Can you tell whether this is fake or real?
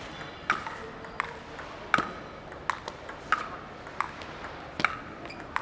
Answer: real